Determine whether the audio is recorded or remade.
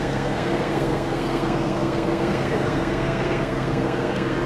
remade